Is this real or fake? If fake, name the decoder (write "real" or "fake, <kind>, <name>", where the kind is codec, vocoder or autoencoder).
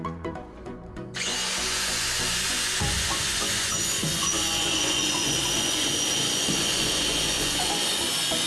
fake, vocoder, Vocos